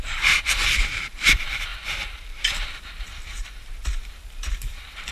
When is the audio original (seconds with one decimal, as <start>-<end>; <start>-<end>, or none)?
none